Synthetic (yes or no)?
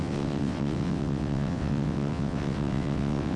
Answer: yes